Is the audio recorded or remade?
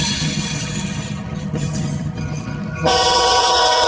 remade